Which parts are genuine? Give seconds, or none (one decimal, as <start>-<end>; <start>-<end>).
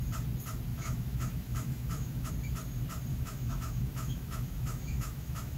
0.0-0.7; 2.3-3.1